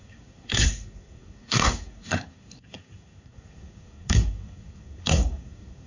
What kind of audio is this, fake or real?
fake